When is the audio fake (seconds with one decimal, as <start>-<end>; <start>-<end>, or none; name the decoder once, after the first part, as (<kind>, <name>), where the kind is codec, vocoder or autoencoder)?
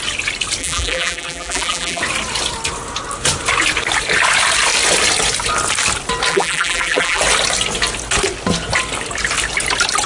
0.6-2.0 (vocoder, BigVGAN v2); 6.3-7.2